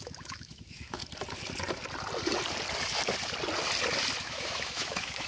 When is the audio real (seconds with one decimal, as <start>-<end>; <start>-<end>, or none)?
1.0-4.2